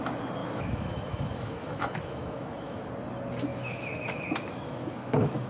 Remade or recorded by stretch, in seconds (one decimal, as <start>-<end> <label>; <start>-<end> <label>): 0.0-0.4 recorded; 0.4-2.9 remade; 2.9-3.5 recorded; 3.5-5.5 remade